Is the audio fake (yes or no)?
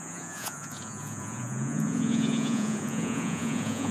yes